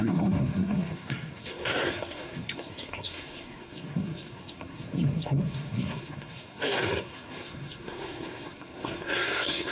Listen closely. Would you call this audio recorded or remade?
remade